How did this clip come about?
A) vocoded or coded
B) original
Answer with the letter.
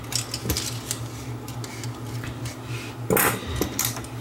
B